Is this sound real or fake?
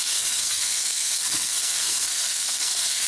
fake